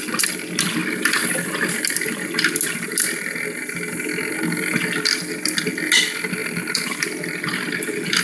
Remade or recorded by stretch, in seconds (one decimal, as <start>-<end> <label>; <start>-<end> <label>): 0.0-8.2 recorded